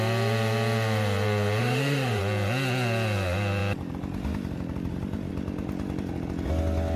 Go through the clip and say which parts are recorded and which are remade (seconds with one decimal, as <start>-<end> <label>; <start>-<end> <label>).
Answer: 0.0-1.6 recorded; 1.6-2.2 remade; 2.2-7.0 recorded